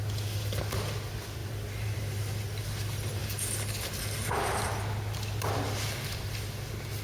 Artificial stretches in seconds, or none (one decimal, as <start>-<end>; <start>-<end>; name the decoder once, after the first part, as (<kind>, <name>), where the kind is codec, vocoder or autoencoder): 1.4-2.3 (vocoder, BigVGAN v2)